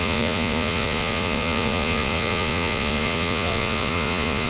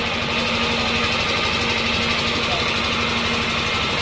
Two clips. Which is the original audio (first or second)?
second